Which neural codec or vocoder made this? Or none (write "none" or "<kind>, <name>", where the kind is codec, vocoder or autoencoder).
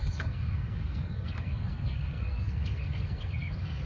codec, SNAC